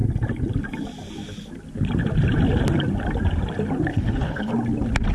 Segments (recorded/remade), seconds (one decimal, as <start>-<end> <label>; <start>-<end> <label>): 0.0-3.9 recorded; 3.9-4.5 remade; 4.5-5.1 recorded

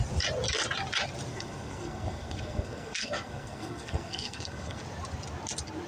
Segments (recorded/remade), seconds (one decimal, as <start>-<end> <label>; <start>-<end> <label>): 0.0-1.3 recorded; 1.3-4.8 remade; 4.8-5.9 recorded

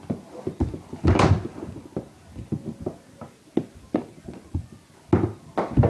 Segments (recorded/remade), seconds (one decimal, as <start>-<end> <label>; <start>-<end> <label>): 0.0-4.1 recorded; 4.1-4.7 remade; 4.7-5.9 recorded

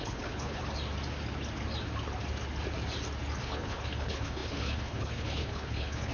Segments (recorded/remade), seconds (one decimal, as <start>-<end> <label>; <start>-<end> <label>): 0.0-0.6 remade; 0.6-3.4 recorded; 3.4-6.1 remade